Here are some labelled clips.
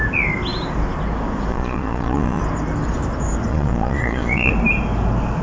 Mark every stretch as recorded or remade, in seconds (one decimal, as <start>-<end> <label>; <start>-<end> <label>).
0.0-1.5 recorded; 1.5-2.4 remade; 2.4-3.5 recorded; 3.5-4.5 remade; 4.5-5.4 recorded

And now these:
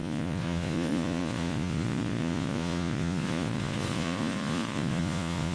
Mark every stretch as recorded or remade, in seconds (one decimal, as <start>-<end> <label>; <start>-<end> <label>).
0.0-5.5 remade

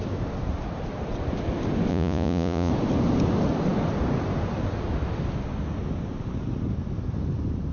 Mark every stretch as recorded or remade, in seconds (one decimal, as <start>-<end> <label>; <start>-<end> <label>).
0.0-1.9 recorded; 1.9-2.7 remade; 2.7-7.7 recorded